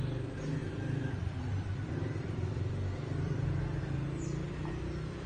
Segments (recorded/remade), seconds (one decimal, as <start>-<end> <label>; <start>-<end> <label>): 0.0-0.6 recorded; 0.6-3.8 remade; 3.8-5.3 recorded